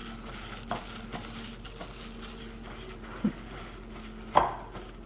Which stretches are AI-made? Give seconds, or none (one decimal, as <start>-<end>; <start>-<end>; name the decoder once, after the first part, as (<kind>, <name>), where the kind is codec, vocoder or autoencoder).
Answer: none